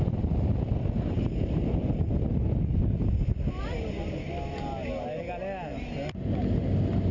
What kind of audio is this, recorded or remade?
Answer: recorded